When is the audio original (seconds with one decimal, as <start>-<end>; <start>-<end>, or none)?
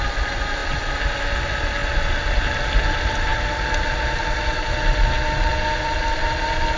0.0-6.8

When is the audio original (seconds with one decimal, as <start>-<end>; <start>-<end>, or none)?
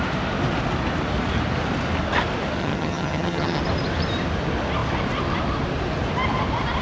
0.0-2.6; 3.6-6.8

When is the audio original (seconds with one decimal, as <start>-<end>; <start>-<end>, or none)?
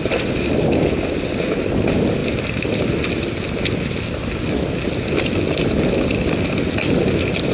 0.0-2.2; 2.8-7.5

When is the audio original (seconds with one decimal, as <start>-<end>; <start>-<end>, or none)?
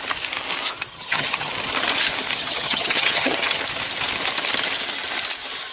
0.0-0.9; 1.5-2.4; 3.6-5.7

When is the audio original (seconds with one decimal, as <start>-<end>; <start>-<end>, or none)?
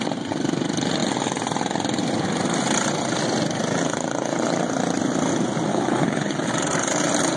0.0-5.7; 6.5-7.4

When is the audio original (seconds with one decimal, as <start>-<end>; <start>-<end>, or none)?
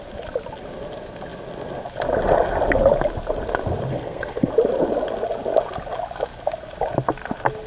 0.0-3.9; 4.5-7.7